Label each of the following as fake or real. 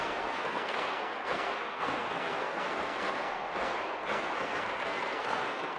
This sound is fake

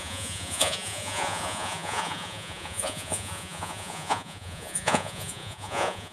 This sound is fake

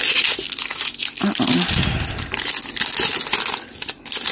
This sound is real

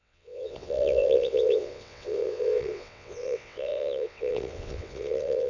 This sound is fake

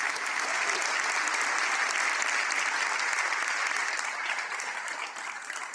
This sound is real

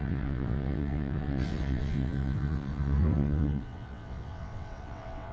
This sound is fake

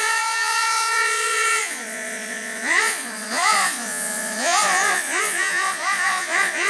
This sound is fake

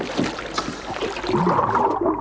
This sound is real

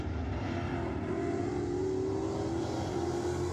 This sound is real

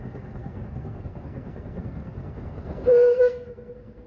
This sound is fake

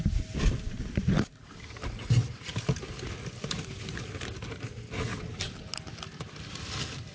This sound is real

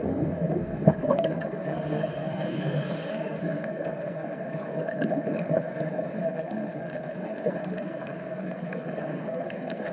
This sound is fake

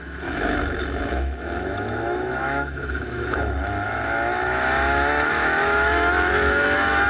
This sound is fake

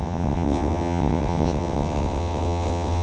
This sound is fake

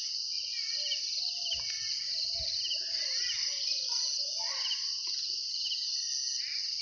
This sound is real